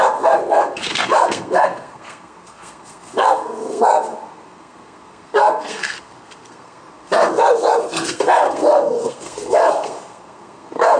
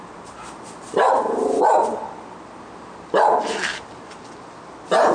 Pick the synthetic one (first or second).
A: first